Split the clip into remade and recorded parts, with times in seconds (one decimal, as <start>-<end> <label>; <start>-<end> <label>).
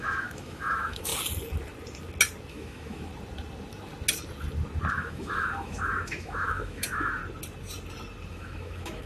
0.0-1.1 remade; 1.1-2.5 recorded; 2.5-3.1 remade; 3.1-4.9 recorded; 4.9-7.2 remade; 7.2-8.3 recorded; 8.3-9.1 remade